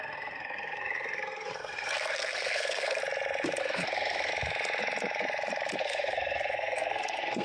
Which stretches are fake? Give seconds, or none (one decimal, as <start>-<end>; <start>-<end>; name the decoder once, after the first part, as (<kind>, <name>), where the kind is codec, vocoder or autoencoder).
0.0-3.0 (codec, SNAC); 3.6-4.3; 5.8-7.4

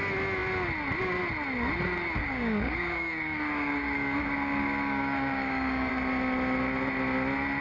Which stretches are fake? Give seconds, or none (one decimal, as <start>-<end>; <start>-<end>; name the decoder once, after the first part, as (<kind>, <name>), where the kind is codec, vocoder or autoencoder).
2.2-5.9 (codec, DAC)

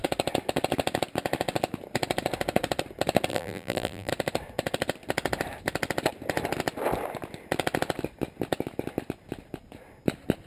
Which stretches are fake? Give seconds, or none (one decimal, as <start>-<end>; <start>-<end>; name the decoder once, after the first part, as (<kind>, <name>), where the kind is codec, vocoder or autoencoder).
3.3-4.1 (vocoder, BigVGAN v2)

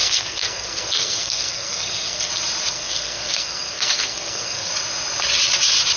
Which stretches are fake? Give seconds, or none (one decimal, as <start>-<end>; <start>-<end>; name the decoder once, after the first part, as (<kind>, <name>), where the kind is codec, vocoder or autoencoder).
0.0-2.3 (codec, SNAC); 2.7-4.7

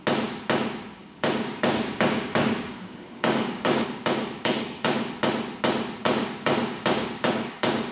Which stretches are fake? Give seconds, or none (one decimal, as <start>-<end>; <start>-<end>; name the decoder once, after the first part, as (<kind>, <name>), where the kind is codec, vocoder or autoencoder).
1.0-5.1 (codec, DAC); 6.0-7.9

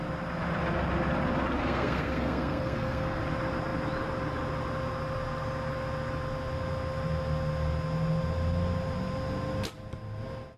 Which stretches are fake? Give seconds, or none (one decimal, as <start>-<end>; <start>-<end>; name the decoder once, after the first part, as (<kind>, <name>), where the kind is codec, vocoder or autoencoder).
1.6-3.2 (codec, SNAC)